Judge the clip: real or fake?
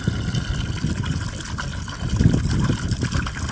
real